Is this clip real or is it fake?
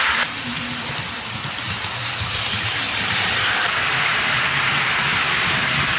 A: fake